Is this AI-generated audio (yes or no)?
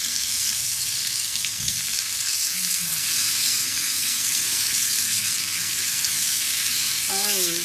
yes